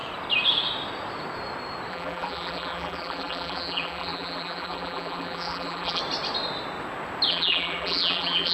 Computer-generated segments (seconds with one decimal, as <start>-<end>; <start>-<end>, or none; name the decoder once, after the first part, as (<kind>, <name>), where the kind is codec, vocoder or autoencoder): 1.9-6.0 (vocoder, BigVGAN v2); 7.3-8.5